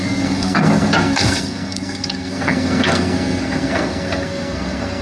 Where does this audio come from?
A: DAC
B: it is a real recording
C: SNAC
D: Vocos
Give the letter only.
C